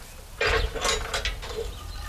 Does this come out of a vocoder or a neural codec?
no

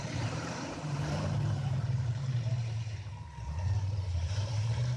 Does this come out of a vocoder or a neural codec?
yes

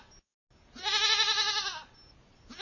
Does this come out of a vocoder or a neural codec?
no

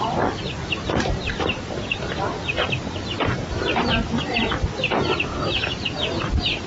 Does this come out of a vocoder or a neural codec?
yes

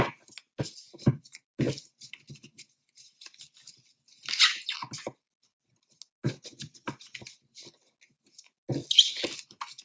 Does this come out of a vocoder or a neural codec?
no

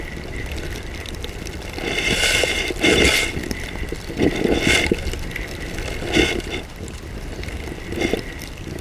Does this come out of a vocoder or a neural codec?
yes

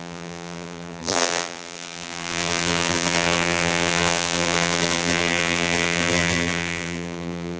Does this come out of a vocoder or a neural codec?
yes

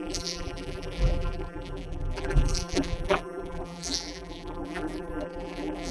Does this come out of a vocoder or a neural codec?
yes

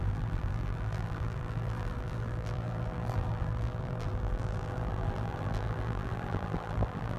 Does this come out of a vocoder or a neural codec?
yes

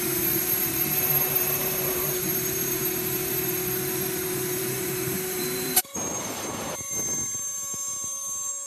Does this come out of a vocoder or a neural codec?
yes